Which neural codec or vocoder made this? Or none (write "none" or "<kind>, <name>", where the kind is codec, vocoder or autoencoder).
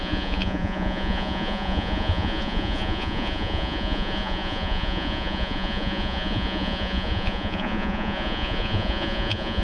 vocoder, Vocos